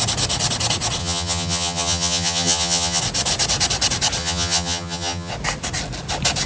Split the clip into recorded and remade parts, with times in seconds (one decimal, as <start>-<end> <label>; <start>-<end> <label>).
0.0-1.0 recorded; 1.0-3.0 remade; 3.0-4.2 recorded; 4.2-5.3 remade; 5.3-6.5 recorded